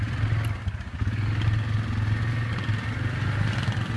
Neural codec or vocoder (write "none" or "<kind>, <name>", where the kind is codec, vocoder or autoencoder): none